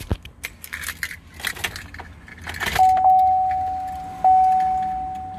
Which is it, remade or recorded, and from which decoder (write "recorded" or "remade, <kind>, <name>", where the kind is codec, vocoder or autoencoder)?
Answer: recorded